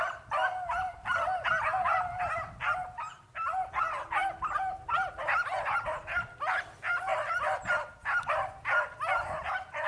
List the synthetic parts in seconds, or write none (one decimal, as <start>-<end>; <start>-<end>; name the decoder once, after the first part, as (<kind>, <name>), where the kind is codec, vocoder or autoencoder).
none